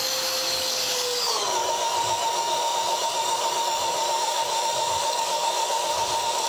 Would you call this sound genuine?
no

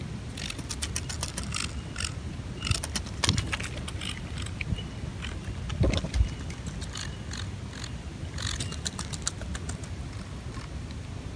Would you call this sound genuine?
yes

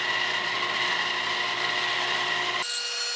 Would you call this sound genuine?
yes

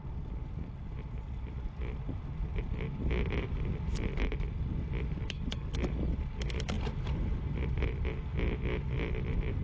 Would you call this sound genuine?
yes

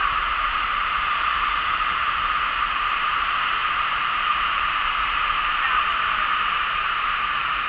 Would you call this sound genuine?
no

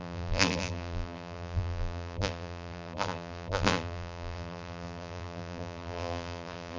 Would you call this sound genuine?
no